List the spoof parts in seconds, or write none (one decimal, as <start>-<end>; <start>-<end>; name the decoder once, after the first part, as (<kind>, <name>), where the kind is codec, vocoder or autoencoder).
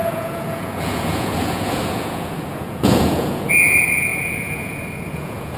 0.0-5.6 (vocoder, Vocos)